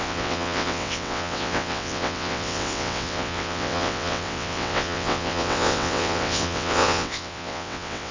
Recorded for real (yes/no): no